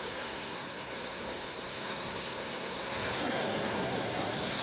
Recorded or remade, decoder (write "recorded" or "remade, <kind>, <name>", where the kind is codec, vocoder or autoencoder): remade, codec, SNAC